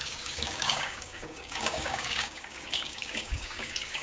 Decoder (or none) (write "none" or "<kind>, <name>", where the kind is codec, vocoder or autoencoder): codec, DAC